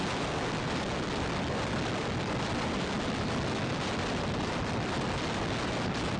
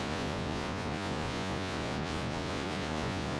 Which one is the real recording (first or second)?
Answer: first